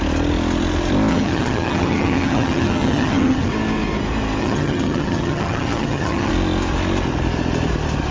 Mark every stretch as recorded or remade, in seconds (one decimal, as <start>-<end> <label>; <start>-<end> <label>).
0.0-1.1 recorded; 1.1-3.5 remade; 3.5-4.4 recorded; 4.4-6.3 remade; 6.3-8.1 recorded